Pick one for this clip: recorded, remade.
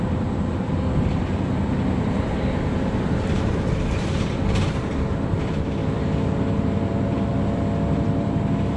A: remade